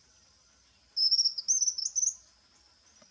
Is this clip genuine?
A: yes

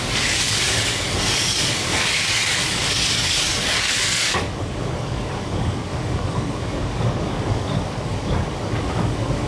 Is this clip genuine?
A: no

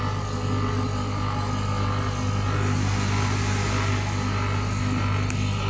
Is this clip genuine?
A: yes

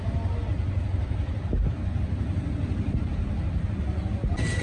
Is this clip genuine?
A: yes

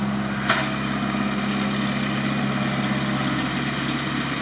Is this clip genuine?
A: yes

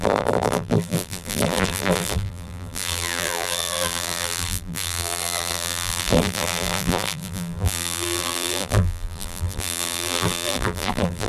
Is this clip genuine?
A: no